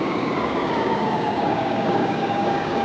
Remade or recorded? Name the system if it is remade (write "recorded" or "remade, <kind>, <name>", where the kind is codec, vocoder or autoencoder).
remade, codec, DAC